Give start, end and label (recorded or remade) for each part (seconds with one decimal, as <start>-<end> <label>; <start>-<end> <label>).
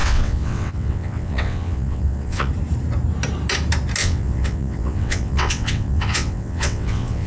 0.0-2.5 remade; 2.5-4.0 recorded; 4.0-7.3 remade